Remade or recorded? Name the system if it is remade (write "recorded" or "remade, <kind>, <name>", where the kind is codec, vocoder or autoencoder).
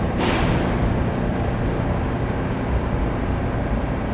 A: remade, vocoder, BigVGAN v2